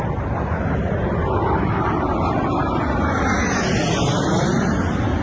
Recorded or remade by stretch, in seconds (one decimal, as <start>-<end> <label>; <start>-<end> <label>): 0.0-2.6 recorded; 2.6-3.2 remade; 3.2-5.2 recorded